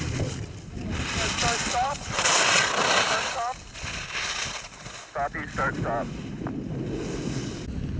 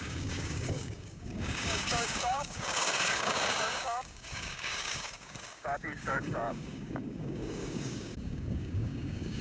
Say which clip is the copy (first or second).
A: second